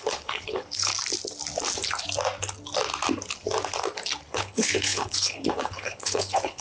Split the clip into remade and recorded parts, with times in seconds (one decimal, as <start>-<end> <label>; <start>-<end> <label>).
0.0-0.9 remade; 0.9-4.3 recorded; 4.3-6.6 remade